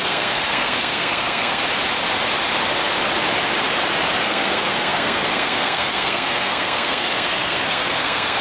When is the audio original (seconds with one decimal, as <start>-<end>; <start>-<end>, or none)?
1.6-4.2